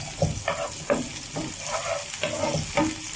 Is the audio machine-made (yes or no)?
no